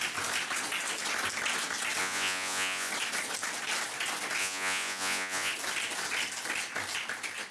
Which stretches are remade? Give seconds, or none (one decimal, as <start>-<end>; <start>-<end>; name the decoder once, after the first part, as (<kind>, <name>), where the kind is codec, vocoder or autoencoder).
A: 2.0-2.9 (vocoder, Vocos); 4.4-5.5